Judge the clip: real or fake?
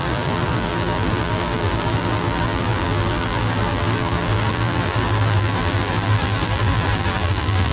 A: fake